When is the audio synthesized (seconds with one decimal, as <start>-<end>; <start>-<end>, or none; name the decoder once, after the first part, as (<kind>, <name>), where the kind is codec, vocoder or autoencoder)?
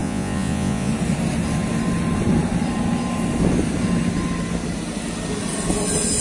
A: 0.0-0.9 (vocoder, Vocos)